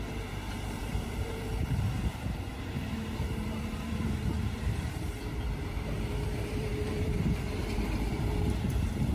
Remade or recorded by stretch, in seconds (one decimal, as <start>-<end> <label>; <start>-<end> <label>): 0.0-9.1 remade